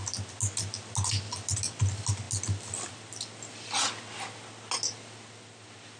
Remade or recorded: recorded